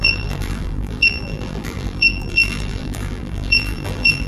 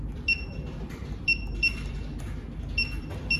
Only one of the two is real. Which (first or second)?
second